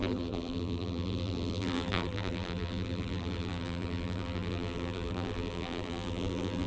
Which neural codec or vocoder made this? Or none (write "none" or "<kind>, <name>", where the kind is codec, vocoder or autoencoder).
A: vocoder, BigVGAN v2